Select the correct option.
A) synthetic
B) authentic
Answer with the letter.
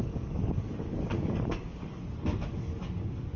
A